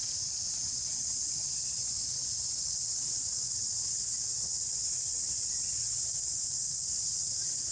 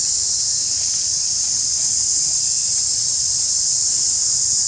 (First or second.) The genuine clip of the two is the second